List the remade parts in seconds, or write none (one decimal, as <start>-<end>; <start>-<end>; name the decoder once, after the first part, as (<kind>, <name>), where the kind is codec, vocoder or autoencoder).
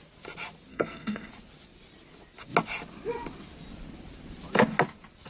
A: 0.7-1.3 (codec, SNAC)